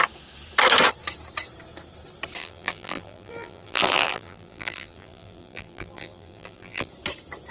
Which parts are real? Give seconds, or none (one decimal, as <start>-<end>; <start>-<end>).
0.0-2.4; 6.9-7.5